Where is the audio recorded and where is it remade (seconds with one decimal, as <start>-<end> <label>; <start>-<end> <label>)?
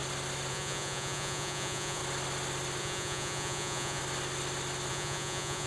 0.0-0.5 recorded; 0.5-2.0 remade; 2.0-2.8 recorded; 2.8-4.0 remade; 4.0-4.9 recorded; 4.9-5.7 remade